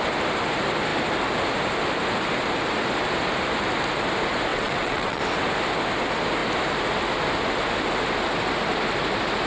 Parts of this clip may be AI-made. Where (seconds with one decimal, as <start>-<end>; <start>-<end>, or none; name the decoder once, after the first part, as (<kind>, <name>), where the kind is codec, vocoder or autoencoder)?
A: 4.5-5.2 (vocoder, WaveNeXt)